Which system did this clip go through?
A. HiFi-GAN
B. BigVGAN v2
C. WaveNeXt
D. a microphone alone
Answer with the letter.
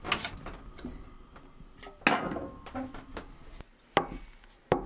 D